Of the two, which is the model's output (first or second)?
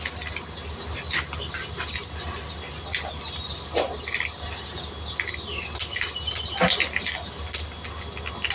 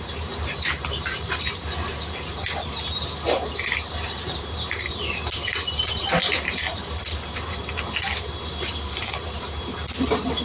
second